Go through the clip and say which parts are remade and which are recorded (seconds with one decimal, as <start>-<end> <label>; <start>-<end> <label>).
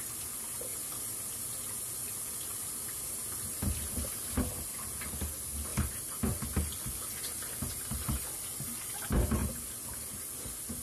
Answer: 0.0-10.8 recorded